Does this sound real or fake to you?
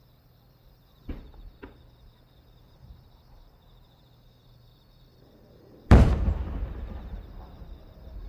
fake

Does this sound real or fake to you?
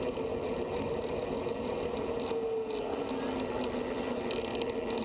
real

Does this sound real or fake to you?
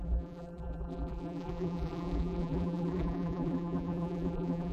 fake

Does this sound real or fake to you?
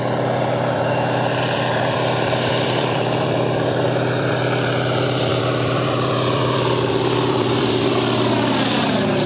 fake